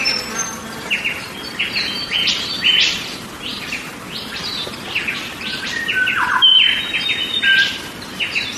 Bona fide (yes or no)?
yes